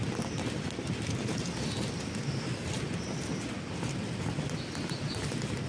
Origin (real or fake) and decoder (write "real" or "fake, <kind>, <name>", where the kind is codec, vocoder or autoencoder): real